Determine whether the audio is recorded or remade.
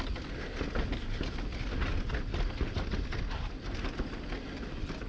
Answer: recorded